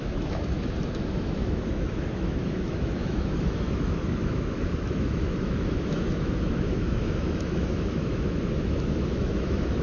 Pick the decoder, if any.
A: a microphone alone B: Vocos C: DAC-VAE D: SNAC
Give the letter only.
C